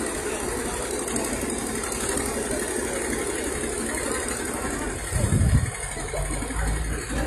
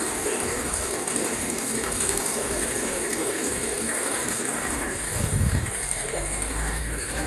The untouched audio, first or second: first